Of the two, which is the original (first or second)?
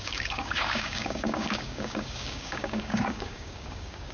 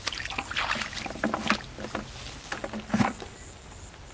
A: second